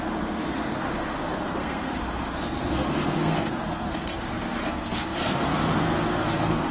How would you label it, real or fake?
fake